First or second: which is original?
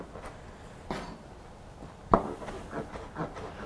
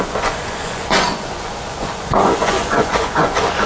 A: first